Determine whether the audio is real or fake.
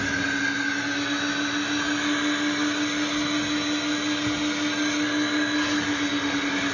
real